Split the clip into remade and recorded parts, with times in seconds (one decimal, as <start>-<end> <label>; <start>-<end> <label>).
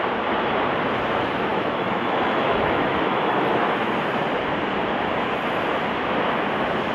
0.0-1.5 recorded; 1.5-3.9 remade; 3.9-6.9 recorded